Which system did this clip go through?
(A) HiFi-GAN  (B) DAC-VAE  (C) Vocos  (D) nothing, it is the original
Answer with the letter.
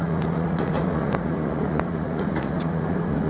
C